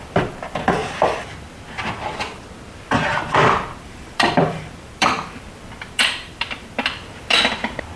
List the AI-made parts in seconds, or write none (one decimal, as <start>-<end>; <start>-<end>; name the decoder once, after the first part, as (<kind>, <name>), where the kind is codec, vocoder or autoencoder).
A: 0.0-0.8 (vocoder, BigVGAN v2); 3.1-8.0